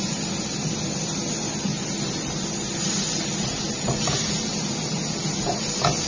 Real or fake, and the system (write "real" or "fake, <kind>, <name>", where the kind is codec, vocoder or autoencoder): real